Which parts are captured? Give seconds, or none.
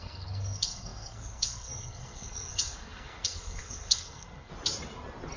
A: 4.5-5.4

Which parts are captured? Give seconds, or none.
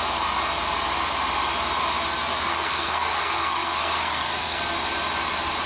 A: 0.0-2.5; 4.6-5.7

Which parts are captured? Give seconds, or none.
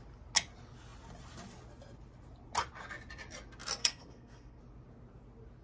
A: 0.0-3.8; 4.6-5.6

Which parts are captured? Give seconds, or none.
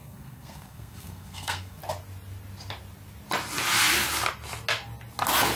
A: 1.8-5.6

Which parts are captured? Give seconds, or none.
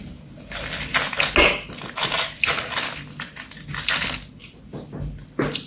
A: 0.0-5.7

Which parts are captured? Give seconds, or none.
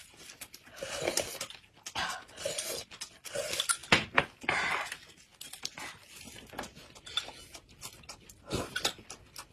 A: 0.0-9.5